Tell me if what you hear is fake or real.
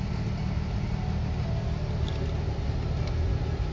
real